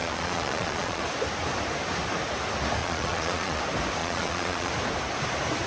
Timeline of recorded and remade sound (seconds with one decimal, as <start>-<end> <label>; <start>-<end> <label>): 0.0-1.0 remade; 1.0-2.8 recorded; 2.8-3.6 remade; 3.6-4.0 recorded; 4.0-4.7 remade; 4.7-5.7 recorded